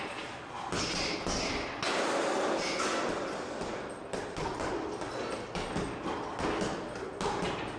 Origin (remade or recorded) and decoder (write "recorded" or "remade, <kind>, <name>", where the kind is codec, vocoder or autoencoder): recorded